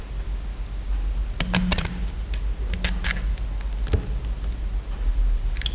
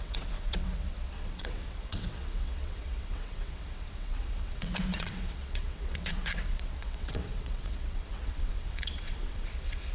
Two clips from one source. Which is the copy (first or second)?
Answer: second